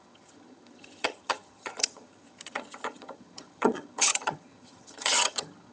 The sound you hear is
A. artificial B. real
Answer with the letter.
A